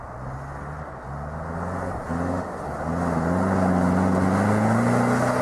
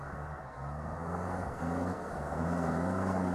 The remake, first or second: second